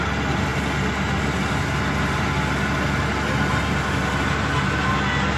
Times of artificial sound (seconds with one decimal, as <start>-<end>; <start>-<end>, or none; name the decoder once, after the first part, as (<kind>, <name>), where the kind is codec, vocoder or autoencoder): none